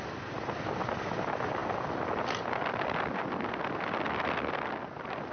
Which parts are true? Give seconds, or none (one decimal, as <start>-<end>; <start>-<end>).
0.0-5.3